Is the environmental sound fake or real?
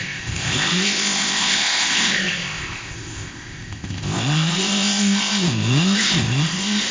fake